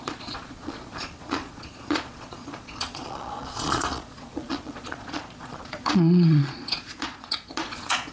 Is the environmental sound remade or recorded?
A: remade